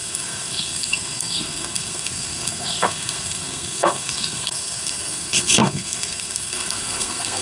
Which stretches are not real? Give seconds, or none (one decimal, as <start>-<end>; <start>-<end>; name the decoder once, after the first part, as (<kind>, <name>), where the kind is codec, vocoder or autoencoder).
0.0-7.4 (codec, SNAC)